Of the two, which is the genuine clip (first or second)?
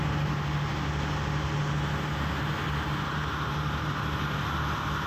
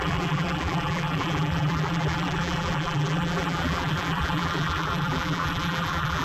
first